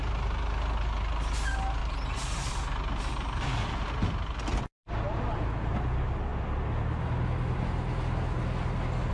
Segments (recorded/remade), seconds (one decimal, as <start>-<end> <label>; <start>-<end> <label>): 0.0-1.8 recorded; 1.8-2.5 remade; 2.5-9.1 recorded